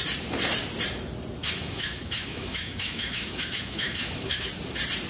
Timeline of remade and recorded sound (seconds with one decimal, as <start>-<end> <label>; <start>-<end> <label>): 0.0-1.4 recorded; 1.4-4.5 remade; 4.5-5.1 recorded